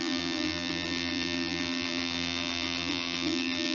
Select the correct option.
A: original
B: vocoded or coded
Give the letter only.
B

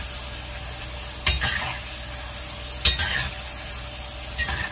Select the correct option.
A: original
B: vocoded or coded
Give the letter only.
A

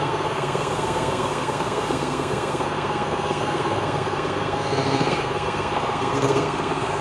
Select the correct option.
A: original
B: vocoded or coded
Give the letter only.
B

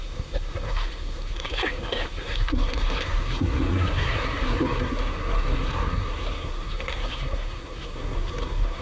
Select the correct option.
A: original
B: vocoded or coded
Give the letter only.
B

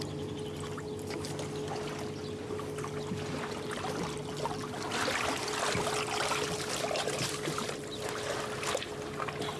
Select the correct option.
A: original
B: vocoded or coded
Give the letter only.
A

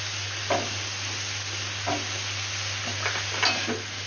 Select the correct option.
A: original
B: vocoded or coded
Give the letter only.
A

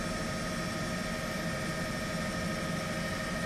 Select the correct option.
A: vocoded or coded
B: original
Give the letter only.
B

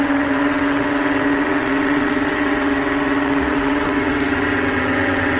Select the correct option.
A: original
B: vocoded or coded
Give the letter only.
B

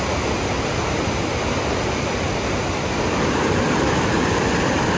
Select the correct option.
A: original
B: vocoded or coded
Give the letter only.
A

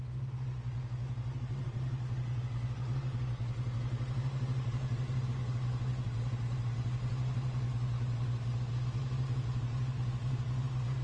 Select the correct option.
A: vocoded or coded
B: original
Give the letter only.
B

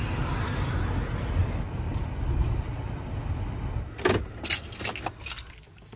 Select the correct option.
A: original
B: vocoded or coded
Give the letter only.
A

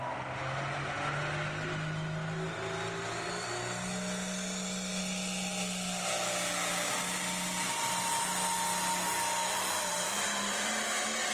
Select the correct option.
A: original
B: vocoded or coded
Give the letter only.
A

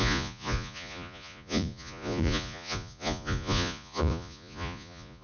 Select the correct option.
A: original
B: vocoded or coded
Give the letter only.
B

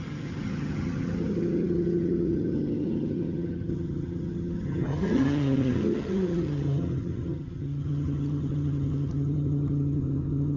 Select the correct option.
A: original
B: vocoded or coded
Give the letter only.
B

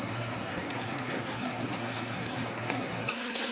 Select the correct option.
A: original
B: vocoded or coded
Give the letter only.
B